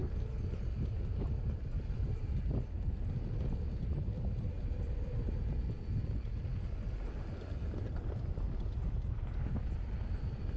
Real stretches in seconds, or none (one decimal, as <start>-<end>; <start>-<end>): 0.0-10.6